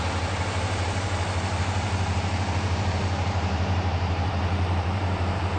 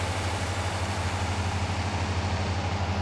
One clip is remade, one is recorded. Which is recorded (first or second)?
second